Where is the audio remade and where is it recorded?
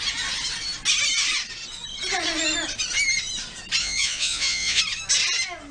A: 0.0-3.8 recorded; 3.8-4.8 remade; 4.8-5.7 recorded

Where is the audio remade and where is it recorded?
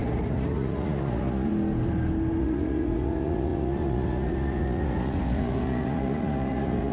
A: 0.0-1.5 remade; 1.5-2.4 recorded; 2.4-6.9 remade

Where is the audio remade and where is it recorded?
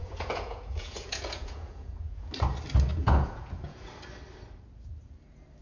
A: 0.0-2.3 remade; 2.3-2.9 recorded; 2.9-3.9 remade; 3.9-5.6 recorded